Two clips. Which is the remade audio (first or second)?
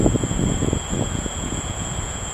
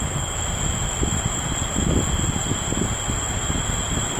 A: first